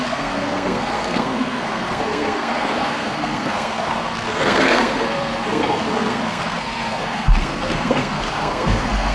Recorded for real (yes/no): no